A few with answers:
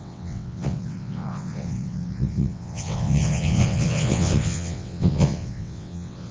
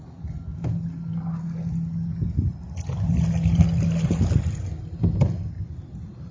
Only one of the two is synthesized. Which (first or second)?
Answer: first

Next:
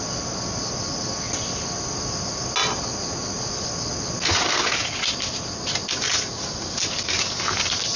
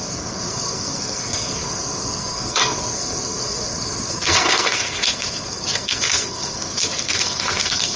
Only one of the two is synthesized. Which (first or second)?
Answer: second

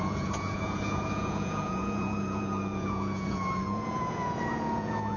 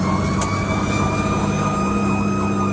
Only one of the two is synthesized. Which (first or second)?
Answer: first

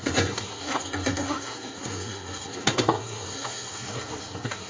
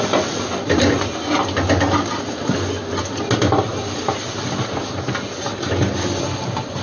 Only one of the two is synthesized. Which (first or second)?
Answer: first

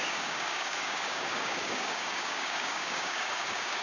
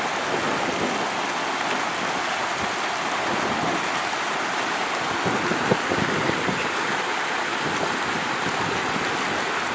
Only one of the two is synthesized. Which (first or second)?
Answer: first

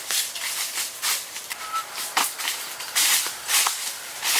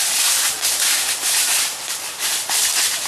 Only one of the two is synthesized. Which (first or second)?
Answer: second